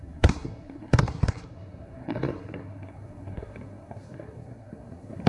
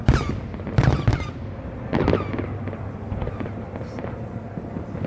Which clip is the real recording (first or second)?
second